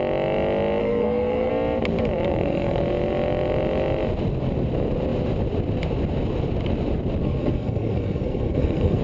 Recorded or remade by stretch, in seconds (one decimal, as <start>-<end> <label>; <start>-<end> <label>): 0.0-0.8 recorded; 0.8-1.5 remade; 1.5-2.3 recorded; 2.3-2.8 remade; 2.8-7.2 recorded; 7.2-9.0 remade